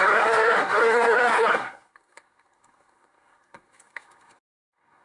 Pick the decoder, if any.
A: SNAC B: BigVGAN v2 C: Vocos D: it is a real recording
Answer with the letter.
A